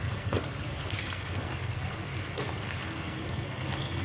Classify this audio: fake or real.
fake